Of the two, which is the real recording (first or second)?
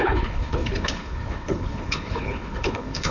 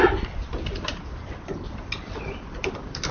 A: second